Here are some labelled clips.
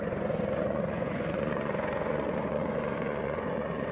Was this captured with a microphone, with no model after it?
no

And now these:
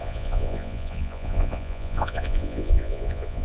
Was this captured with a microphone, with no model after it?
no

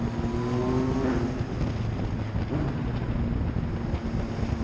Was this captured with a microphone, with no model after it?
yes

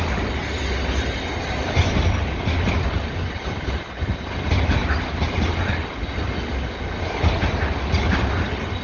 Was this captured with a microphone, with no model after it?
yes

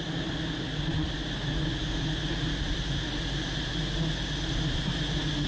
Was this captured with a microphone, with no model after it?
yes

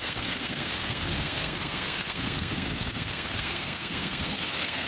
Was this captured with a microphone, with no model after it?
no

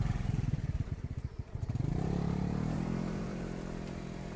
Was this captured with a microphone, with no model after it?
no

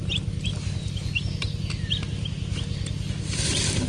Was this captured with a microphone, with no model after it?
yes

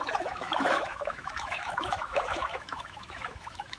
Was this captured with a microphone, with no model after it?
no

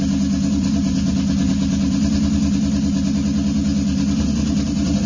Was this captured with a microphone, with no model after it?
yes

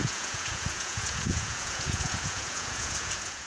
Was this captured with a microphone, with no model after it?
no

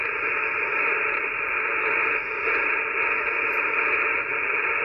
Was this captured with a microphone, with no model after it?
yes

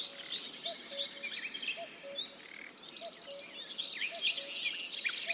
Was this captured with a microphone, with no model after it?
yes